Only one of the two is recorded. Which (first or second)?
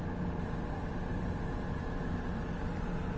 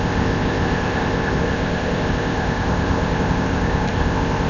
first